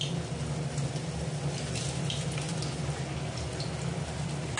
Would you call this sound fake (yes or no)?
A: no